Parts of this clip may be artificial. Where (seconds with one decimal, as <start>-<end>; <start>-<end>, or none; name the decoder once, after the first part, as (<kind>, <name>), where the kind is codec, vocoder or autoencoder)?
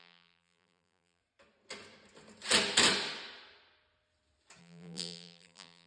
0.0-1.2 (vocoder, BigVGAN v2); 4.6-5.9